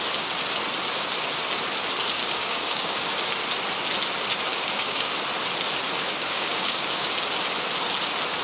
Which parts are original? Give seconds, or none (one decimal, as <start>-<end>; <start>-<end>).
0.0-2.2; 3.3-4.5; 5.1-6.2; 7.1-8.4